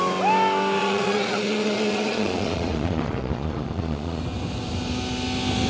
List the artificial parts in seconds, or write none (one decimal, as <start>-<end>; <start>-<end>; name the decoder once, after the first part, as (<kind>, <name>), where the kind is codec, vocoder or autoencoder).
0.8-4.2 (vocoder, Vocos)